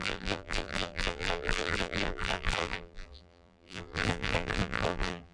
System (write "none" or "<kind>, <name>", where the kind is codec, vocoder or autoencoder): vocoder, BigVGAN v2